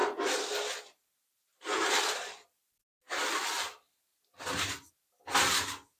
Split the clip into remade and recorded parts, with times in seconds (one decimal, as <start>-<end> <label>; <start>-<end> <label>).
0.0-3.6 remade; 3.6-6.0 recorded